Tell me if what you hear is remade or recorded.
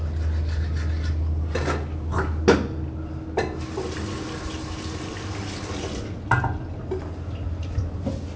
recorded